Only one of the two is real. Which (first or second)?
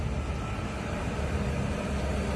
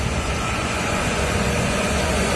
first